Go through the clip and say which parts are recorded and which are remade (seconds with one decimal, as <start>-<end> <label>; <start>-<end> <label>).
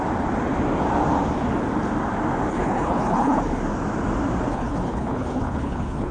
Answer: 0.0-2.5 recorded; 2.5-3.4 remade; 3.4-4.5 recorded; 4.5-6.1 remade